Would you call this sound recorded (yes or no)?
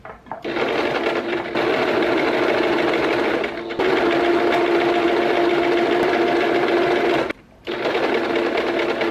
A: yes